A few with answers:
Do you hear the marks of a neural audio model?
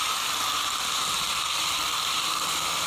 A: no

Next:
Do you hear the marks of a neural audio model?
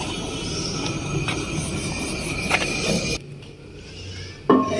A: no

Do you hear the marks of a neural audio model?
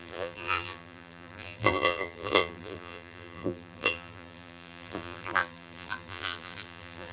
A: yes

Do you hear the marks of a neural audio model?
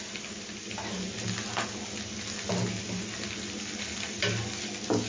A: no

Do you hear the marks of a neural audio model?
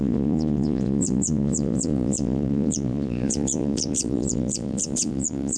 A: yes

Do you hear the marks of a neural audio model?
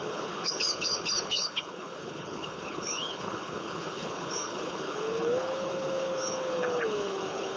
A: yes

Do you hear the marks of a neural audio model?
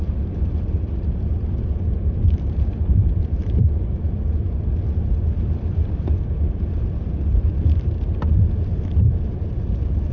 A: yes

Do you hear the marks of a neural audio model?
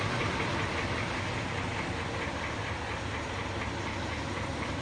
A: no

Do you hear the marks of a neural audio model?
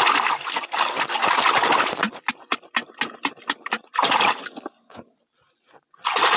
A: no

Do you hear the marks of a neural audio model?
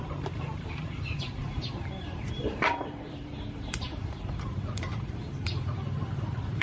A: yes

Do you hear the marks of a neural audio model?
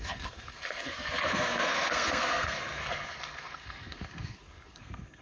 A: yes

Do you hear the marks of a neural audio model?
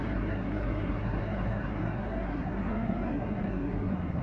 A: yes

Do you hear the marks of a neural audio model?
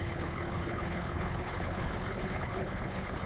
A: yes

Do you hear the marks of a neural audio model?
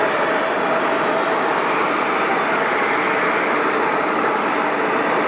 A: no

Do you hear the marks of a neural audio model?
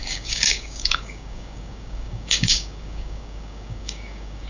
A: yes